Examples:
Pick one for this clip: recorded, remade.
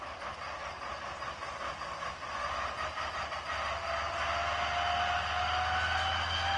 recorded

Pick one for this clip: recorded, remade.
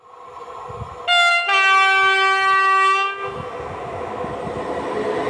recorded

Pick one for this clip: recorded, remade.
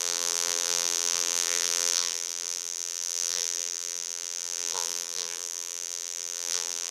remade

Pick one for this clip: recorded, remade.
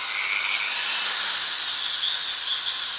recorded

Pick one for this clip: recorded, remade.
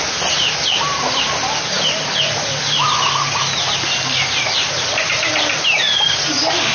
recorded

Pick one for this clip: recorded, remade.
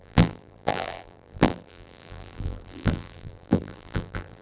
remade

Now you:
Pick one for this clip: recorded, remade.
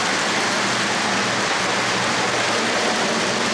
recorded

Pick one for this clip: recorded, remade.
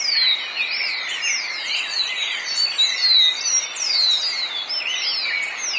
recorded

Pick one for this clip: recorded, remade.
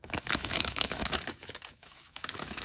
remade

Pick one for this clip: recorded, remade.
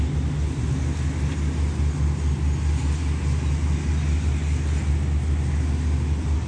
recorded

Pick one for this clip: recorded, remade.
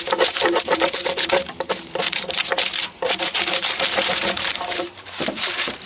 remade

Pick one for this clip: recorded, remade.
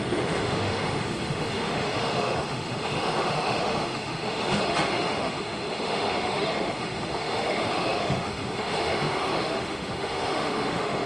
remade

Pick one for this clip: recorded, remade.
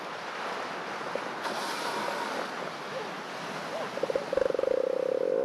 recorded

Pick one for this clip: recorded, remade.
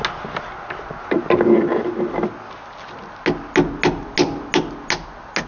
recorded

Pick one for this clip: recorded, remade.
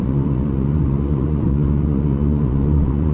remade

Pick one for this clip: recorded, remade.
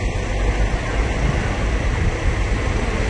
recorded